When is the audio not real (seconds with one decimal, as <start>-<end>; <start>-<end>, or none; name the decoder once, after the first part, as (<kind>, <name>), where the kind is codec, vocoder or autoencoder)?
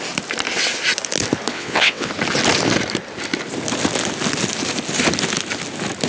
1.5-2.1 (vocoder, WaveNeXt)